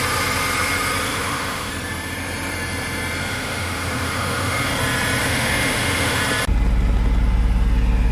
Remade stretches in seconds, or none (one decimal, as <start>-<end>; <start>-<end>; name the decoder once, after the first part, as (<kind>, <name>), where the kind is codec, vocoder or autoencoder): 1.1-1.7 (autoencoder, DAC-VAE); 3.3-4.7; 5.2-6.2